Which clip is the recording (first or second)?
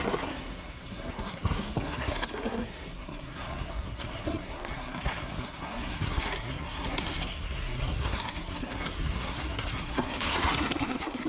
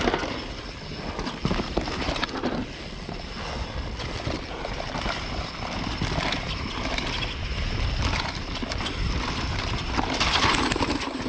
second